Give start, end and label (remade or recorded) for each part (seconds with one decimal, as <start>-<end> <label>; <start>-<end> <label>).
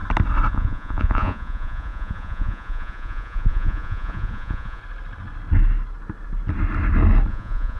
0.0-0.5 recorded; 0.5-4.8 remade; 4.8-7.3 recorded; 7.3-7.8 remade